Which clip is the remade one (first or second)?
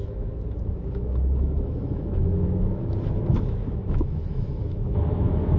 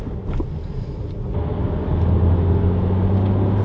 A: first